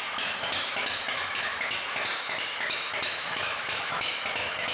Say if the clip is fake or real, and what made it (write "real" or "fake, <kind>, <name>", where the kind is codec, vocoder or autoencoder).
fake, autoencoder, DAC-VAE